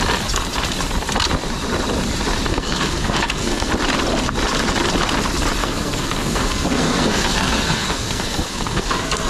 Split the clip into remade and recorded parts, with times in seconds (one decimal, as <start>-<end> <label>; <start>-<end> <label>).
0.0-2.5 recorded; 2.5-3.7 remade; 3.7-5.6 recorded; 5.6-9.3 remade